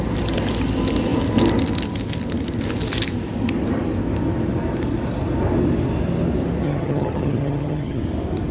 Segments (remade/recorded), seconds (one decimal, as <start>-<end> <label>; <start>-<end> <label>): 0.0-6.6 recorded; 6.6-8.0 remade; 8.0-8.5 recorded